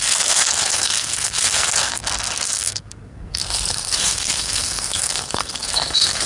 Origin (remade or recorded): remade